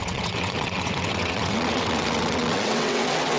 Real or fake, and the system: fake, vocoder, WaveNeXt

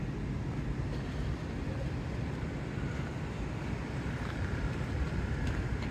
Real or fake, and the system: real